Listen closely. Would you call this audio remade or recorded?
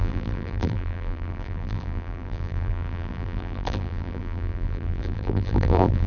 remade